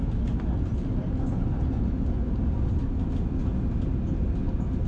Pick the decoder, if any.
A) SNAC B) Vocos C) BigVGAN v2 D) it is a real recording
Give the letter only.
D